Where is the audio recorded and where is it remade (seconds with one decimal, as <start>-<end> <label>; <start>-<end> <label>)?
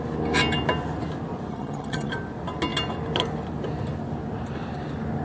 0.0-1.5 recorded; 1.5-2.1 remade; 2.1-5.2 recorded